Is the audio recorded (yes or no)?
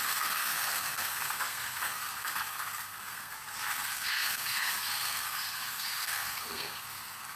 no